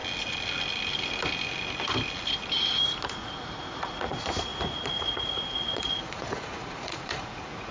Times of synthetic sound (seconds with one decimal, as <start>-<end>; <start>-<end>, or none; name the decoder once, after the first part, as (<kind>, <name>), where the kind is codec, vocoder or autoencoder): 3.2-7.7 (vocoder, Vocos)